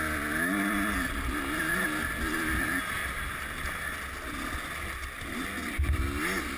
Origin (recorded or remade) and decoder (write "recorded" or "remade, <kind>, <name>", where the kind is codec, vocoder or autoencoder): recorded